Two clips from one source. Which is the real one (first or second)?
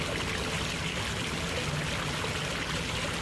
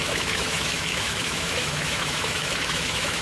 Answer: first